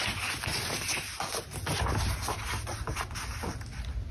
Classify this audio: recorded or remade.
recorded